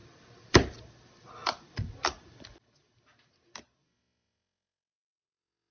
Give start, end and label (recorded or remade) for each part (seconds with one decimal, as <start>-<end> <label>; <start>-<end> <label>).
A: 0.0-5.7 recorded